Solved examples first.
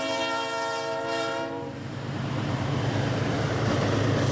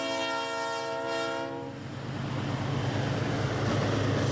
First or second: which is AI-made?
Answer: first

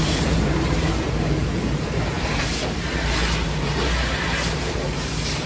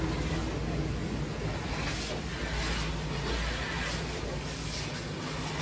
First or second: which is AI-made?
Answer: first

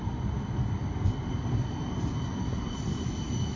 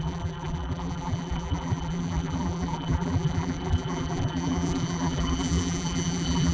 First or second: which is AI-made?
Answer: second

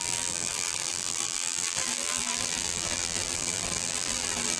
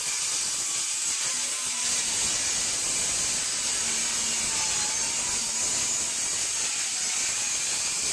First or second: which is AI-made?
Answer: first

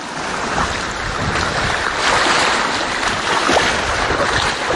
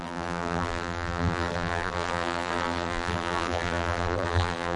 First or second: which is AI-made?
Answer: second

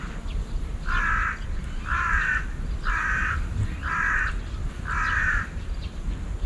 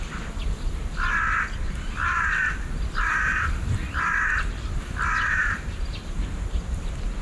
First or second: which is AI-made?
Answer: second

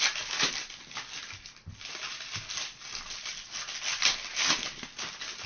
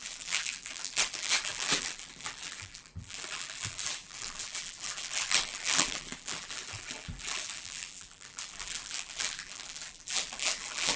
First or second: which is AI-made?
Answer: second